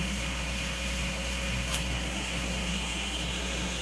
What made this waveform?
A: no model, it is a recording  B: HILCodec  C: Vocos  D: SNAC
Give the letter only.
D